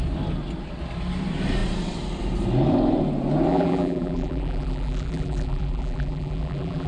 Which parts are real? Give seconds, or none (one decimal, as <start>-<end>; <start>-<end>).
0.0-3.5